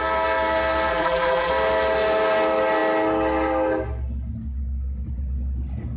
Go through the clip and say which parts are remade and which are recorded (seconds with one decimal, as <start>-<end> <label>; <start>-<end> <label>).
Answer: 0.0-0.9 recorded; 0.9-1.5 remade; 1.5-6.0 recorded